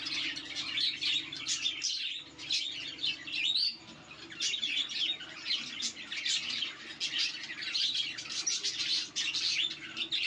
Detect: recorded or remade recorded